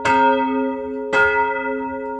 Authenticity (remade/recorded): recorded